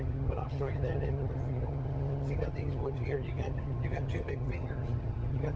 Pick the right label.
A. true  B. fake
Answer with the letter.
B